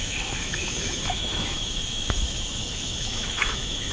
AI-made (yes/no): yes